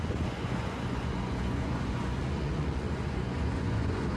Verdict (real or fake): fake